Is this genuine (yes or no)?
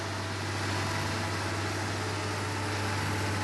yes